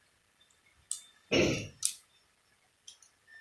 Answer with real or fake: real